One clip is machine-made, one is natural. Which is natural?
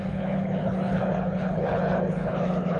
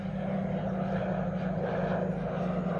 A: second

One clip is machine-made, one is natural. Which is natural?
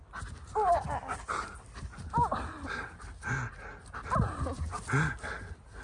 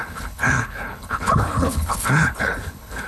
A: first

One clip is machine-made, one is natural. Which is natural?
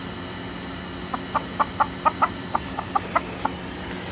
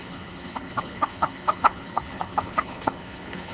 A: first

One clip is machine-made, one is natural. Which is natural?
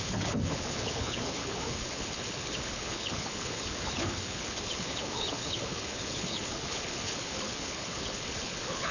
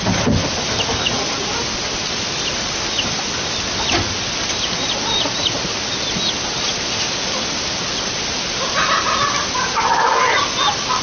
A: second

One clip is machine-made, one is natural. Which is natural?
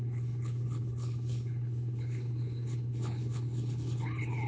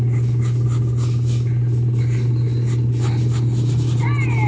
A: second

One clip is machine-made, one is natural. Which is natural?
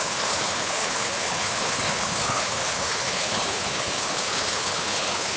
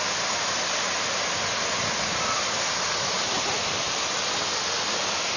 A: second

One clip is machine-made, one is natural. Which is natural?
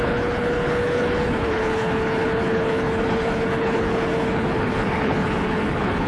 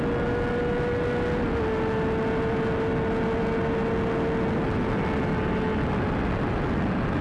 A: second